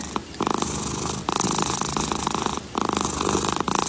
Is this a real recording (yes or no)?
yes